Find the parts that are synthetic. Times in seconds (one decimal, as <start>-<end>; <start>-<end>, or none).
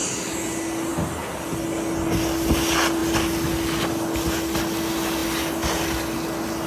none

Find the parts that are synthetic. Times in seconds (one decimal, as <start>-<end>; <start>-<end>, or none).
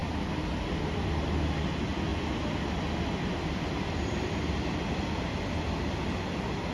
none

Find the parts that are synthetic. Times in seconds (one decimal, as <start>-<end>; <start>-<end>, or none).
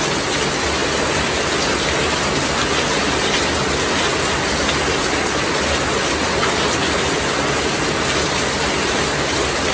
none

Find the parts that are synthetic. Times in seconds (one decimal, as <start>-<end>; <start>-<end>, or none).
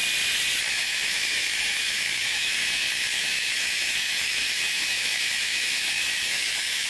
0.7-6.9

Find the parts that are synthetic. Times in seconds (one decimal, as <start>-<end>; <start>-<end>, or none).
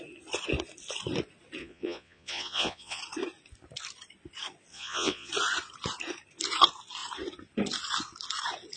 1.6-3.0; 4.7-5.3